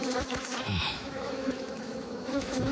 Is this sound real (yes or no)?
no